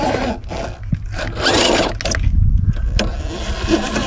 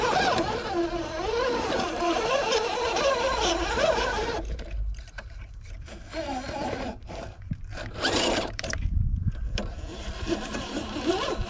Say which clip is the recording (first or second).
first